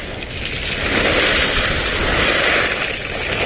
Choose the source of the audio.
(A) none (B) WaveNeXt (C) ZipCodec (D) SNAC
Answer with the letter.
A